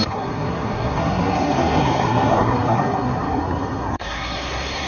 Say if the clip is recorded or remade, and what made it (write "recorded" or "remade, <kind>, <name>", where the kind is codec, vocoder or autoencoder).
remade, codec, SNAC